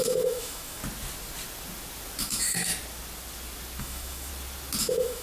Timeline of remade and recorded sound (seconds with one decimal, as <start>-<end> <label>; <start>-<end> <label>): 0.0-0.8 remade; 0.8-2.2 recorded; 2.2-2.7 remade; 2.7-3.8 recorded; 3.8-4.3 remade; 4.3-4.8 recorded; 4.8-5.2 remade

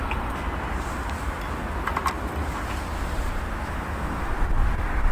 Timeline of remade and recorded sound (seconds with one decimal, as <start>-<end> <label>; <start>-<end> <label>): 0.0-3.6 recorded; 3.6-4.3 remade; 4.3-5.1 recorded

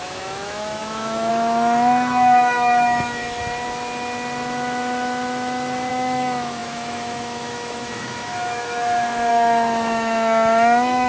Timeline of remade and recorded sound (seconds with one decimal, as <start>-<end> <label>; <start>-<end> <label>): 0.0-3.4 remade; 3.4-5.9 recorded; 5.9-11.1 remade

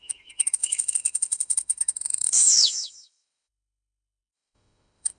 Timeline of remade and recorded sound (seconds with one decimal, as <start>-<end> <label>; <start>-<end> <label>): 0.0-5.2 remade

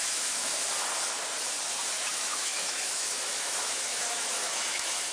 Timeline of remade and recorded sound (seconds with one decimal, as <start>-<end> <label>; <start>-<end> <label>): 0.0-0.5 remade; 0.5-2.0 recorded; 2.0-5.1 remade

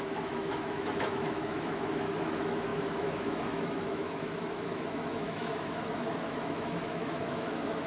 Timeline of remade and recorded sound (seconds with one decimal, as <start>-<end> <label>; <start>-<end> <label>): 0.0-7.9 remade

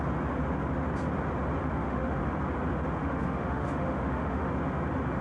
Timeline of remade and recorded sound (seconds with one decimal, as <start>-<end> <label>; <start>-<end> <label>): 0.0-1.6 recorded; 1.6-2.2 remade; 2.2-3.0 recorded; 3.0-4.5 remade; 4.5-5.2 recorded